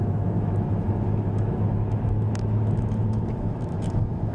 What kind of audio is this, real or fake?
fake